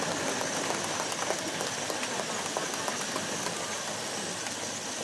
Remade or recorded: recorded